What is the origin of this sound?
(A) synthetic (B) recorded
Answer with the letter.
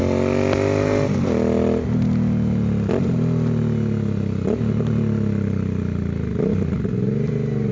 B